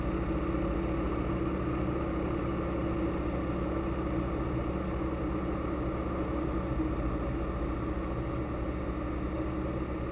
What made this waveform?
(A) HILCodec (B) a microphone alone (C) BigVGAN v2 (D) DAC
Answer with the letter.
B